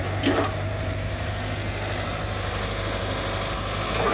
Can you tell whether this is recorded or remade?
recorded